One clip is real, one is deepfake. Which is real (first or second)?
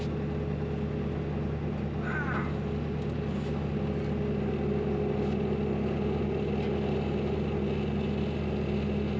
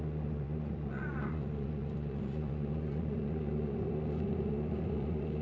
first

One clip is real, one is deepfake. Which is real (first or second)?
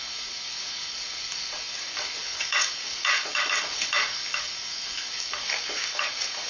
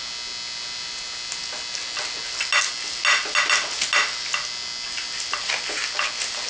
second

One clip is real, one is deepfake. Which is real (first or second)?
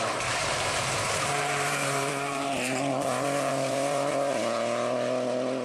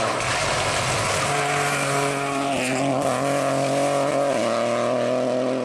second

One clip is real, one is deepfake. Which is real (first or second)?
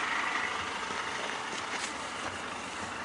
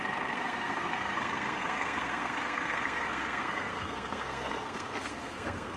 first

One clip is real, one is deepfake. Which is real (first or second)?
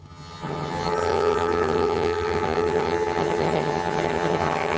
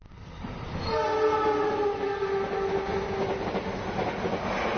second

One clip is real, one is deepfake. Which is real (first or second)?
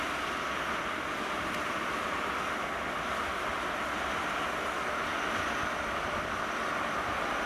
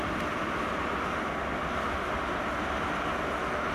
second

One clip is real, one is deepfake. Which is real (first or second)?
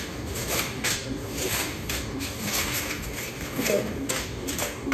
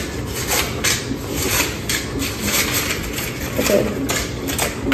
second